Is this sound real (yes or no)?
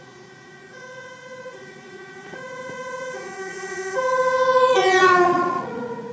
no